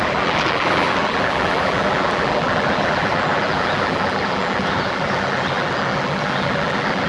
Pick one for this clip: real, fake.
fake